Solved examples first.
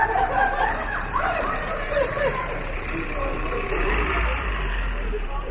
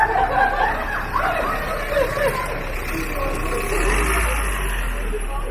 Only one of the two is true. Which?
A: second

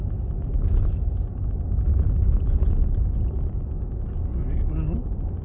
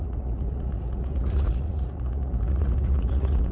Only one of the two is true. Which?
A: first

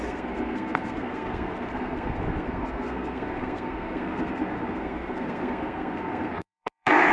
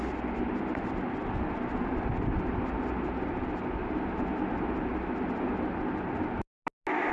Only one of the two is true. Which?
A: second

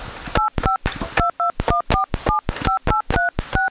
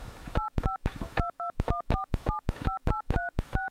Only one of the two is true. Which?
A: first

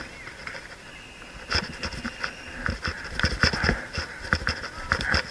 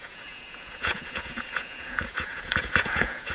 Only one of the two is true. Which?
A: first